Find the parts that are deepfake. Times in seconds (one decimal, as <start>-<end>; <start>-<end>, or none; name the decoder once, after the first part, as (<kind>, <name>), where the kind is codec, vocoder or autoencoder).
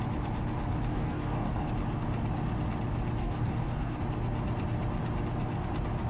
0.9-1.7 (codec, DAC); 3.2-4.0